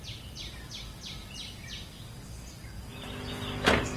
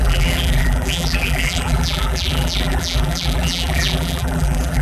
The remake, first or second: second